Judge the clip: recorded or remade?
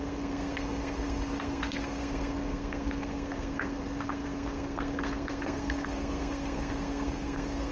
remade